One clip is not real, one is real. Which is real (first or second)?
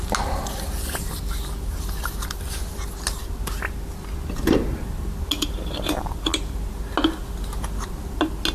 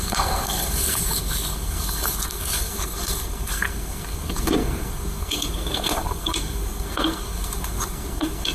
first